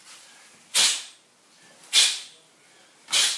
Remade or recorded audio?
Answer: recorded